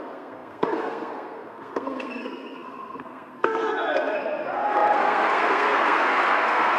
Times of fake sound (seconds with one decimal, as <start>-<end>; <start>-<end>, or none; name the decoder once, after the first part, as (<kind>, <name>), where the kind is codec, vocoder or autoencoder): 0.0-6.8 (codec, SNAC)